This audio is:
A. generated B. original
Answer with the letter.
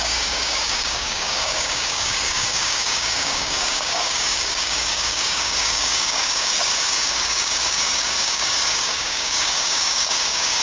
A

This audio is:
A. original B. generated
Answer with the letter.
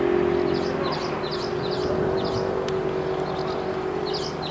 A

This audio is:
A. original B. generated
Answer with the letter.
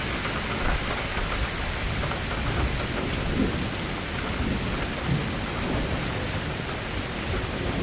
A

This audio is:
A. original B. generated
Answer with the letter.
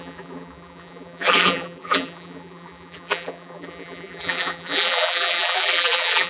B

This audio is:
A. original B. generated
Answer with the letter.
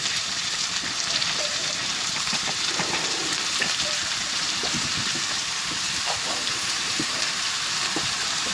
B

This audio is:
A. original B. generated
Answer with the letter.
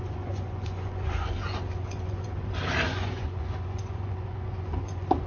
B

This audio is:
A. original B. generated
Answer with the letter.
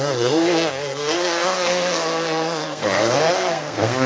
B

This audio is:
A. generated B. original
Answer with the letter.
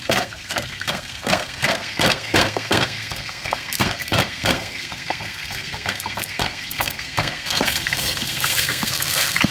A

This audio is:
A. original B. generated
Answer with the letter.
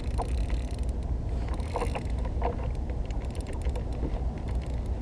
A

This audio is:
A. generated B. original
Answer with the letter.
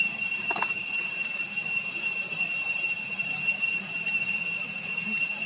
A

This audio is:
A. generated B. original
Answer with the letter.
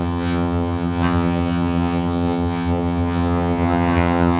A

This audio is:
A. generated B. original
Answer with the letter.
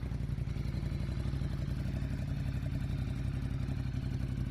B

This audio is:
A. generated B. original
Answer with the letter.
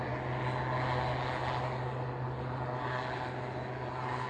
B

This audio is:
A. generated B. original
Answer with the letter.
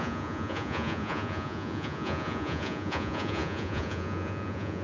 A